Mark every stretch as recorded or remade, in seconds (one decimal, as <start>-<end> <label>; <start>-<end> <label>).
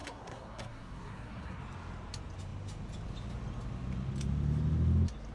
0.0-1.6 remade; 1.6-5.3 recorded